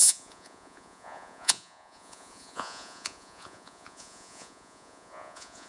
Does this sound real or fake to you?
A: fake